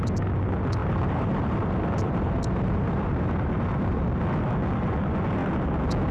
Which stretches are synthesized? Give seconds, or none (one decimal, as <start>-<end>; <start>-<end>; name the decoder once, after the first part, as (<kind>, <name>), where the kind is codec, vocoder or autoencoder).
0.8-4.2 (vocoder, BigVGAN v2)